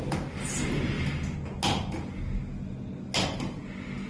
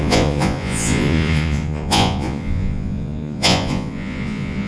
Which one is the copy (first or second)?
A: second